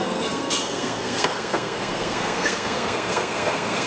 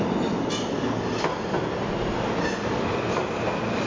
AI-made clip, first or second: first